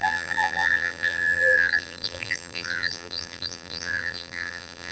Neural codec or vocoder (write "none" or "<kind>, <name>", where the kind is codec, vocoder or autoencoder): vocoder, BigVGAN v2